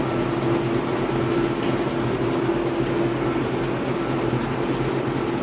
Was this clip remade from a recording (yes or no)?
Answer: no